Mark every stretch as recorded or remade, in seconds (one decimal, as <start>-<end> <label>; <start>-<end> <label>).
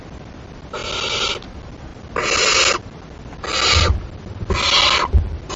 0.0-5.6 recorded